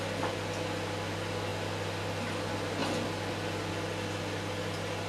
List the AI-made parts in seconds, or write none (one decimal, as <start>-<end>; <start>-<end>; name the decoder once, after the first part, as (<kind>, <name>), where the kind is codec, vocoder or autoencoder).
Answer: none